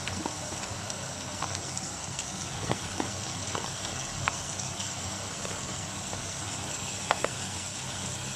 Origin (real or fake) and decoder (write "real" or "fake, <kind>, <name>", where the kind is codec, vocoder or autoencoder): fake, codec, SNAC